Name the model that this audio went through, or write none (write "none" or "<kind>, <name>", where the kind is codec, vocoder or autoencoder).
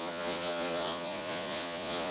vocoder, Vocos